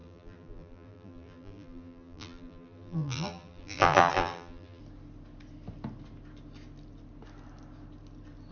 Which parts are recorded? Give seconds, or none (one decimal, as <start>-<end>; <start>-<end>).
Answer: 4.8-8.5